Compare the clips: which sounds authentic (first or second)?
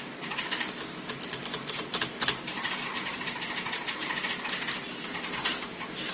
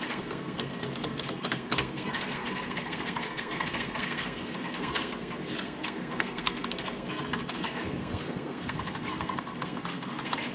first